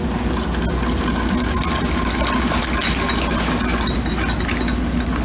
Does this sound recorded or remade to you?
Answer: recorded